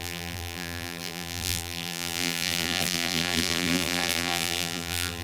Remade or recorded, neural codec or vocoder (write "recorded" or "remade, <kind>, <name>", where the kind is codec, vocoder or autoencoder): remade, vocoder, BigVGAN v2